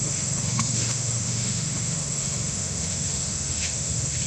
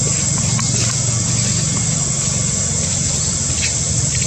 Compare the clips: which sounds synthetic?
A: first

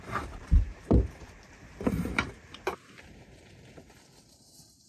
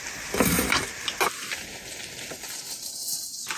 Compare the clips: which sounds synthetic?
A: first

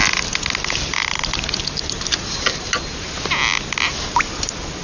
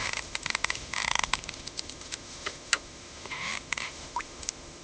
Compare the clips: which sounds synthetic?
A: second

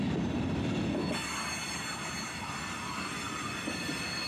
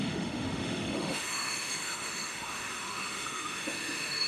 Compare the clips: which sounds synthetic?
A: second